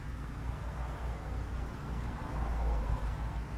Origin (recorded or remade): remade